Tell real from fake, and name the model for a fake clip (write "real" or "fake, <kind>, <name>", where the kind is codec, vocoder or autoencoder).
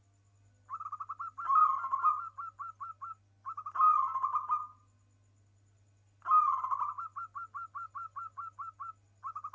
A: real